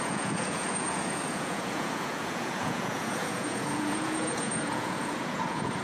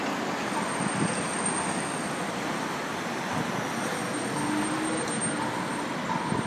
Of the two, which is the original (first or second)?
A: second